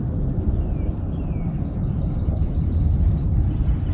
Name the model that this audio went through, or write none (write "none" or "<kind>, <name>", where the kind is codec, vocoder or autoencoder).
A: none